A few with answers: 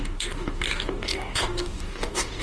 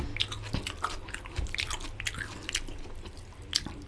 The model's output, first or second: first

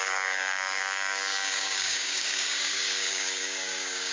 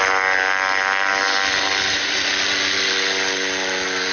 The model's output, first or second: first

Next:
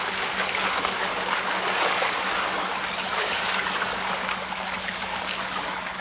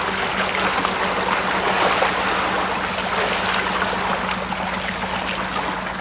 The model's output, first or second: first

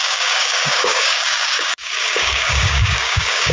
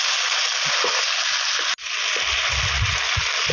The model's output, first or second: first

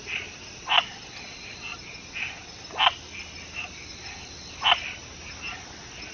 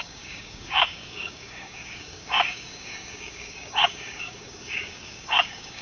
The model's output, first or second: second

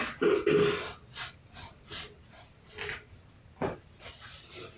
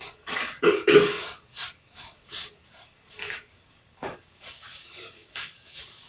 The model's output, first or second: second